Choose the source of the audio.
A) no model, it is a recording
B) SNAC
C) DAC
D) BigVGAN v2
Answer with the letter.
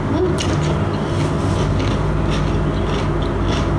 A